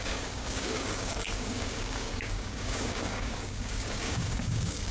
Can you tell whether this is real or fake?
fake